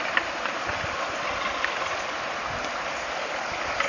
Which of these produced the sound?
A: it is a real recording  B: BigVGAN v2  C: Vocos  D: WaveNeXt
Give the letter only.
A